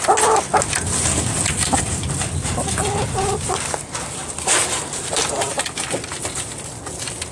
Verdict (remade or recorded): recorded